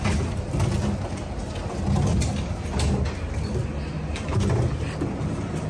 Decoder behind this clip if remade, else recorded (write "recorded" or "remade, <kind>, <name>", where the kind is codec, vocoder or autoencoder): recorded